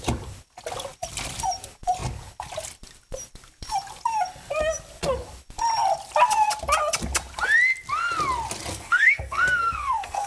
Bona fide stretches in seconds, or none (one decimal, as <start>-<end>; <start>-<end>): 0.0-8.7